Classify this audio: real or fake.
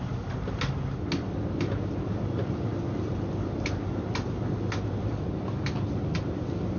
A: real